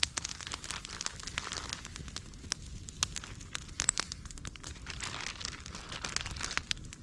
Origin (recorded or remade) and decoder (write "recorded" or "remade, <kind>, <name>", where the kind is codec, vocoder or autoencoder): recorded